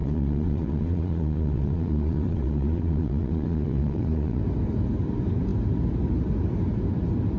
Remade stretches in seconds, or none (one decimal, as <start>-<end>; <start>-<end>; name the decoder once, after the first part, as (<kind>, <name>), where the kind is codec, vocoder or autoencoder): 0.0-4.4 (vocoder, Vocos)